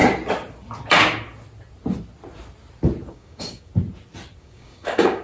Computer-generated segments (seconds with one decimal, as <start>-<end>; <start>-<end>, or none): 3.1-3.7; 4.4-5.2

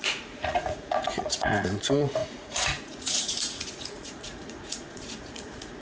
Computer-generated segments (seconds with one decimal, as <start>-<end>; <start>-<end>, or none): 0.0-5.8

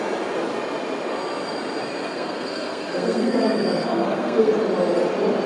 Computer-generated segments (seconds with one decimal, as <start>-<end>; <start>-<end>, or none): 2.0-4.5

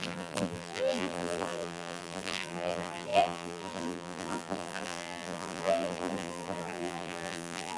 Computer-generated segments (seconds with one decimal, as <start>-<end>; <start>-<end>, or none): 0.0-7.8

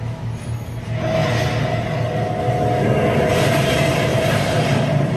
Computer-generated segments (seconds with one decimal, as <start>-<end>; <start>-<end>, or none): 4.1-5.2

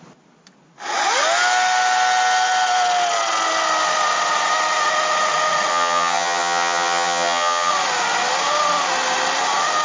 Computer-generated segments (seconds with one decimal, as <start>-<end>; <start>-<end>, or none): 5.7-7.7

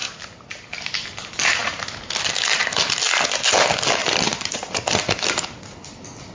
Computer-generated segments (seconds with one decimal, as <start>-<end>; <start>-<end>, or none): 4.0-5.6